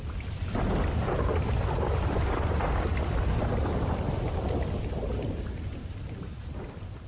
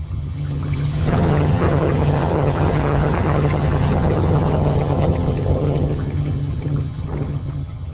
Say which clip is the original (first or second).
first